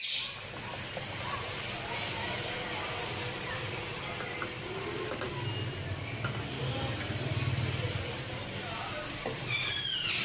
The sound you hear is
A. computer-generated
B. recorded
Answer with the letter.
B